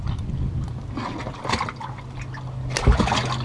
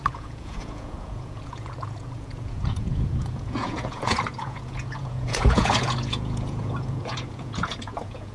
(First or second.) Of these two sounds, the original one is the first